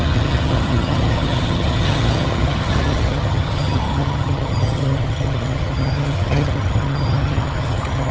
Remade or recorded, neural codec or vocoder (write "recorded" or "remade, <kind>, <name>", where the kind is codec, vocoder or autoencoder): remade, vocoder, HiFi-GAN